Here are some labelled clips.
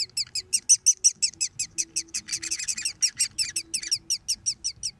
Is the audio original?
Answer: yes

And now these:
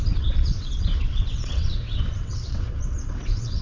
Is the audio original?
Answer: no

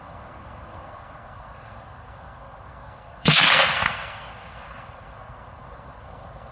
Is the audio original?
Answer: no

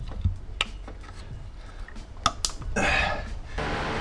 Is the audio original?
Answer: yes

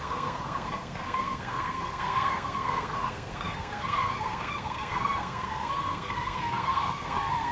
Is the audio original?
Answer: no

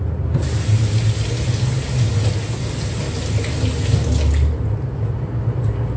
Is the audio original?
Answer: yes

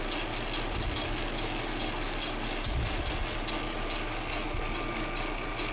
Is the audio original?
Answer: yes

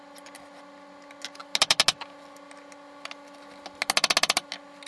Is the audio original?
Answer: yes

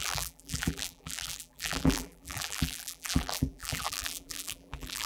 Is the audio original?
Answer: no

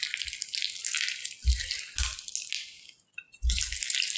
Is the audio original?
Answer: yes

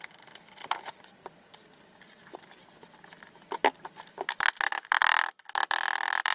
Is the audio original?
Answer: no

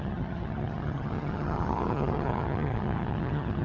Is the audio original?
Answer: no